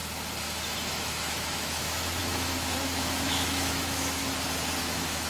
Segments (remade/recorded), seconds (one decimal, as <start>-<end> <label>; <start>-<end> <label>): 0.0-0.9 recorded; 0.9-4.2 remade; 4.2-4.8 recorded; 4.8-5.3 remade